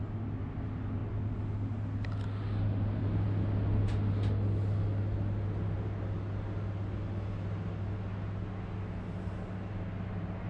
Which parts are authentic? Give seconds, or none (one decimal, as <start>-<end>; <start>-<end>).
0.0-10.5